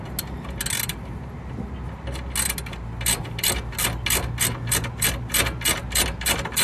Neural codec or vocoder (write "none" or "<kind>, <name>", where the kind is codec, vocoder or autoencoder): none